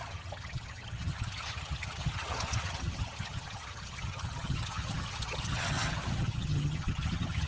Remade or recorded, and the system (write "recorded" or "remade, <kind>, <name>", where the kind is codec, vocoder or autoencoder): remade, vocoder, HiFi-GAN